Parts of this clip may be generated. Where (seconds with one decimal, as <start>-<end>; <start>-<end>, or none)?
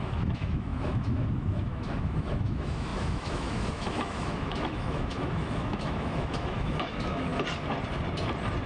0.0-7.3